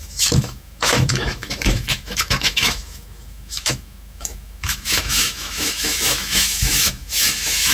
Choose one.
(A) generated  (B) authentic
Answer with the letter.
A